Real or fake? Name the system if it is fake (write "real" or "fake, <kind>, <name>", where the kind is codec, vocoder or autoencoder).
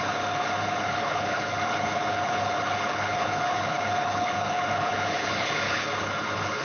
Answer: fake, codec, HILCodec